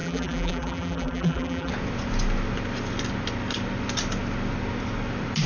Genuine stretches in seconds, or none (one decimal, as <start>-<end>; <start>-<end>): 1.7-5.5